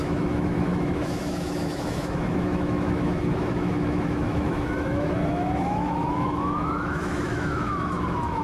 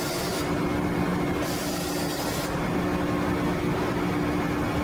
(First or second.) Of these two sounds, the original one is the second